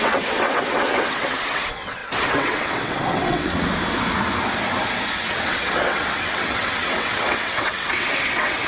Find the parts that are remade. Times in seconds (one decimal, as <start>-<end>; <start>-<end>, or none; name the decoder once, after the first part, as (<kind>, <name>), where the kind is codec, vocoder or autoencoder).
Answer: 0.0-3.7 (vocoder, WaveNeXt); 5.2-8.7